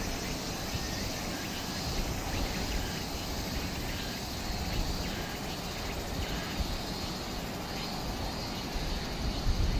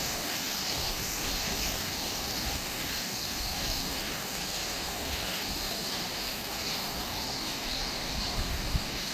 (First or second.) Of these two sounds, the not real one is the second